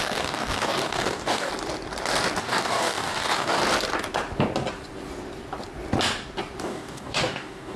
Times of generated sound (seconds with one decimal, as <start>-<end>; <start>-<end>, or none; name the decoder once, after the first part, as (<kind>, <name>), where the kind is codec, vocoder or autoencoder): 0.0-1.5 (codec, DAC); 2.4-3.6; 6.6-7.8